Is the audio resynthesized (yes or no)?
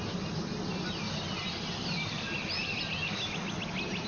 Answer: no